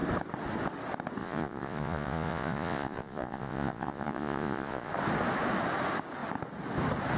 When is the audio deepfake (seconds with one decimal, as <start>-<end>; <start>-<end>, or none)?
1.2-4.9